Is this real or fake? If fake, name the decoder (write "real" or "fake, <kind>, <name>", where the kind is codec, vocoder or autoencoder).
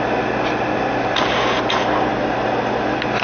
real